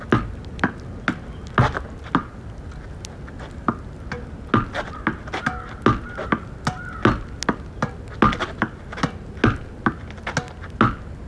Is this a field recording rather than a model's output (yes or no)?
yes